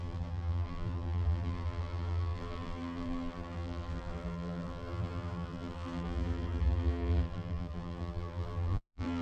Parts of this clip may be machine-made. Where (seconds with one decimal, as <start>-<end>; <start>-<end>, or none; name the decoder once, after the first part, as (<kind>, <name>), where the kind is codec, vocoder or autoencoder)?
0.0-9.2 (vocoder, BigVGAN v2)